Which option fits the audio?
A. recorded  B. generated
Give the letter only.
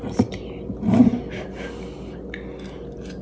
A